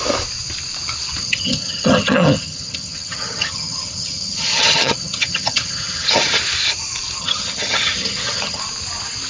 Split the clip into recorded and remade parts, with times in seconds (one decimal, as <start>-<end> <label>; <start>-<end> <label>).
0.0-1.2 recorded; 1.2-6.4 remade; 6.4-7.2 recorded; 7.2-8.6 remade; 8.6-9.3 recorded